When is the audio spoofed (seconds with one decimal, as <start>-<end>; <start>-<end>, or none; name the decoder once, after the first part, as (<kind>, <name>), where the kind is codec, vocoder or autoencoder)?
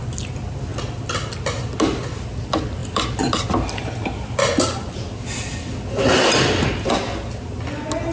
none